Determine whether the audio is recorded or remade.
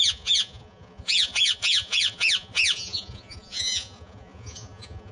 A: remade